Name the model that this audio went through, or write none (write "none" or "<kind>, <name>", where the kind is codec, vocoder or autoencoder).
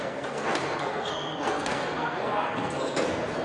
codec, SNAC